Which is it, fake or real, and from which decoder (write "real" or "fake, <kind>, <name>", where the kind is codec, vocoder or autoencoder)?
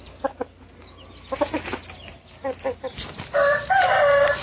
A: real